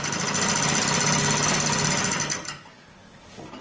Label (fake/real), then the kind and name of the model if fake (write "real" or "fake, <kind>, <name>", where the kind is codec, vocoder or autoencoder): real